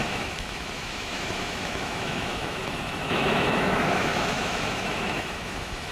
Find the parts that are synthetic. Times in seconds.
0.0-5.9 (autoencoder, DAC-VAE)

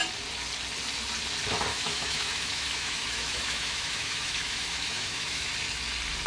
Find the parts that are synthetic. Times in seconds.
1.7-5.5 (autoencoder, DAC-VAE)

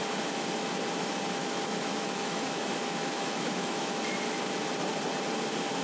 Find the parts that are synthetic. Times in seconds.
1.4-4.0 (autoencoder, DAC-VAE)

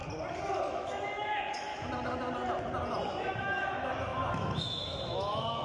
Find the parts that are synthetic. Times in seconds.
0.7-1.7 (autoencoder, DAC-VAE); 3.4-5.6

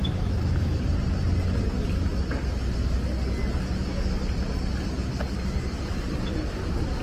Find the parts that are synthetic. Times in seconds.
0.0-0.8 (autoencoder, DAC-VAE)

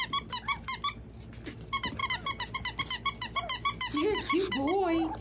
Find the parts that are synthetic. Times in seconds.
none